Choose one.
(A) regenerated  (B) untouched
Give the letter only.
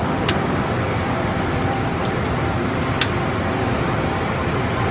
A